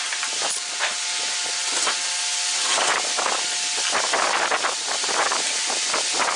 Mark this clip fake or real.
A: real